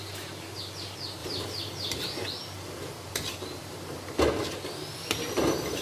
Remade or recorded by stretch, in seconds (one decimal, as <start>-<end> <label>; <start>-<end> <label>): 0.0-1.2 recorded; 1.2-4.2 remade; 4.2-5.8 recorded